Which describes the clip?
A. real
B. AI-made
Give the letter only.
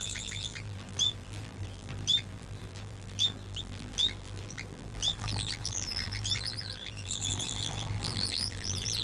B